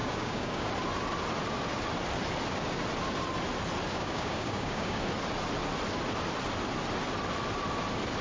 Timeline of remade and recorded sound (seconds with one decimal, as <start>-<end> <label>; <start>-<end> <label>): 0.0-0.7 remade; 0.7-3.9 recorded; 3.9-5.0 remade; 5.0-8.2 recorded